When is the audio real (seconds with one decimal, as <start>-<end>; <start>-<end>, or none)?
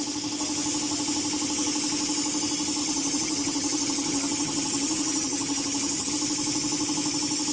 0.0-2.8; 6.1-7.5